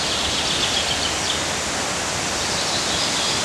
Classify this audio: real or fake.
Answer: real